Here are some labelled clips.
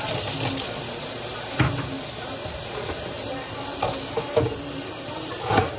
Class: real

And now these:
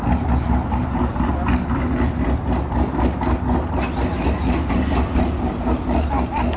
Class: real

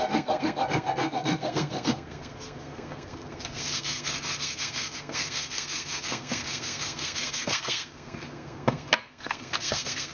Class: fake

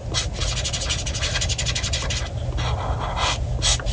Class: real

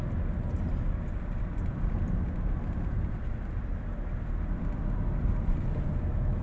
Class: real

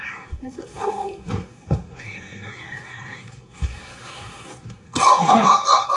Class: fake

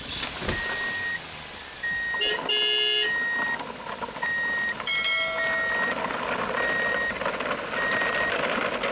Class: real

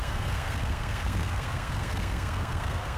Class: fake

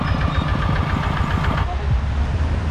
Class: real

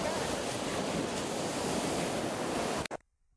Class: real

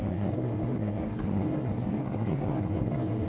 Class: fake